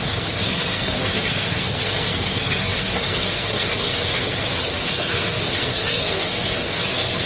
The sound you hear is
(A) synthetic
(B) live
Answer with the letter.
A